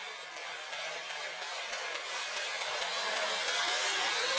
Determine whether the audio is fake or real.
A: real